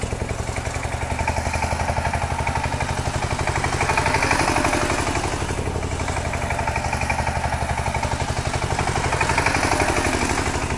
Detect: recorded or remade recorded